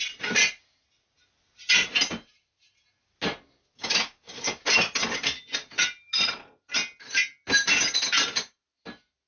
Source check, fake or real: real